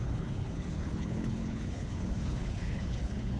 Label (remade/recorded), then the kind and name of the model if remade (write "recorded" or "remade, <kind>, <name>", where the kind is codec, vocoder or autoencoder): remade, codec, HILCodec